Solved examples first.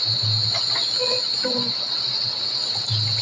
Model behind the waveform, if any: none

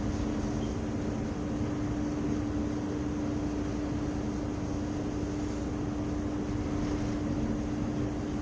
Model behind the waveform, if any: none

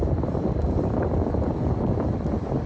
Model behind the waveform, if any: vocoder, BigVGAN v2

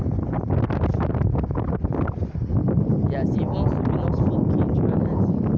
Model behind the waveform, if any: vocoder, BigVGAN v2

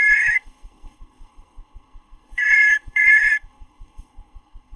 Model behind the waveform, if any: codec, SNAC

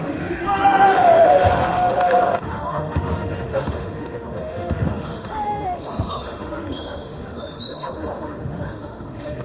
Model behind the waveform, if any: autoencoder, DAC-VAE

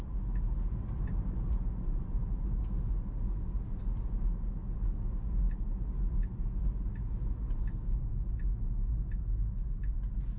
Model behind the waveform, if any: none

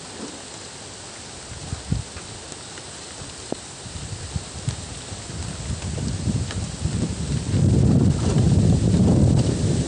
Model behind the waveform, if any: none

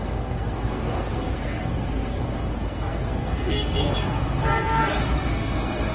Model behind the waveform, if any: codec, SNAC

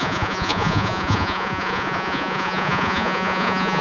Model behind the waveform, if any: vocoder, Vocos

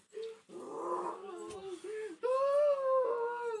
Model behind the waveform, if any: none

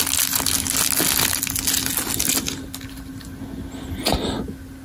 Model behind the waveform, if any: none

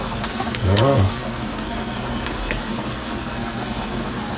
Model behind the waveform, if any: codec, SNAC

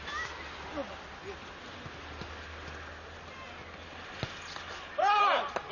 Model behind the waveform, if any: none